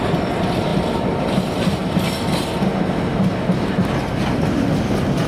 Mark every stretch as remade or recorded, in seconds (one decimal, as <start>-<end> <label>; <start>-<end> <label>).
0.0-5.3 recorded